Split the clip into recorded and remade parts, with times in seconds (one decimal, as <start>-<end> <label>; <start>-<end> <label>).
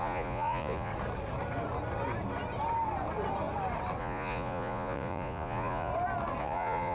0.0-0.9 remade; 0.9-4.0 recorded; 4.0-5.9 remade; 5.9-6.4 recorded; 6.4-6.9 remade